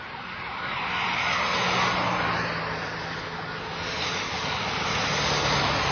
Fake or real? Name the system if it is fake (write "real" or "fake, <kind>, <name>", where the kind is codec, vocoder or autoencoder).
real